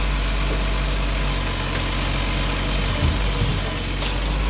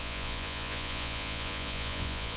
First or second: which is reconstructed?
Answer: second